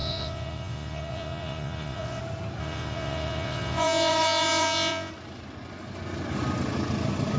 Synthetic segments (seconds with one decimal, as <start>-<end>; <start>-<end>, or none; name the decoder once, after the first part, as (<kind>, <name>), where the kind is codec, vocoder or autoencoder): 0.0-2.2 (vocoder, Vocos); 2.6-5.1